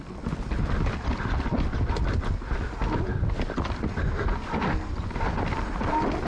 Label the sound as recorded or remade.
recorded